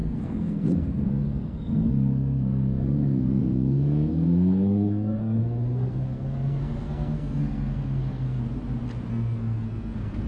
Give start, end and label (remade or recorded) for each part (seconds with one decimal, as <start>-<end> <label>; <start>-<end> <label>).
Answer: 0.0-8.4 remade; 8.4-9.1 recorded; 9.1-10.3 remade